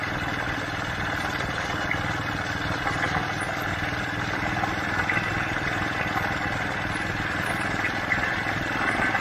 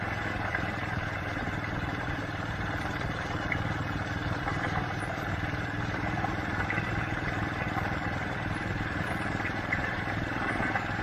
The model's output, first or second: second